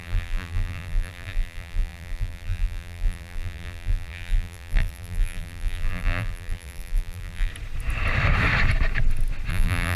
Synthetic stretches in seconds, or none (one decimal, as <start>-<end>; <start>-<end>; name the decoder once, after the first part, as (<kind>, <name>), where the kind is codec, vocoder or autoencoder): 0.0-7.5 (vocoder, BigVGAN v2); 9.5-10.0